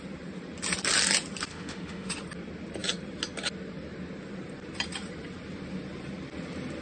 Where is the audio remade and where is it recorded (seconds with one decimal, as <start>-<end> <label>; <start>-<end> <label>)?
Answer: 0.0-1.5 recorded; 1.5-2.1 remade; 2.1-6.8 recorded